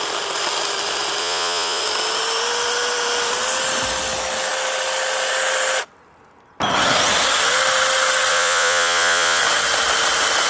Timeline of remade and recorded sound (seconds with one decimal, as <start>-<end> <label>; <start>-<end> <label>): 0.0-1.2 recorded; 1.2-1.8 remade; 1.8-8.3 recorded; 8.3-9.4 remade; 9.4-10.5 recorded